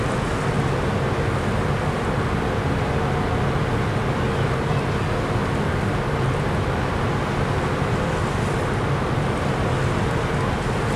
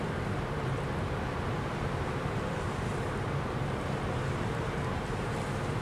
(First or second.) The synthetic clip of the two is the second